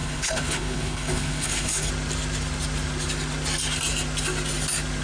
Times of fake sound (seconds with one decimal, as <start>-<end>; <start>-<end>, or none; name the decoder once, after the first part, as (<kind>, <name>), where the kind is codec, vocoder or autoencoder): 0.0-1.9 (codec, HILCodec)